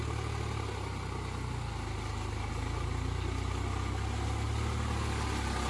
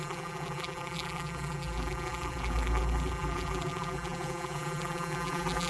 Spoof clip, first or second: second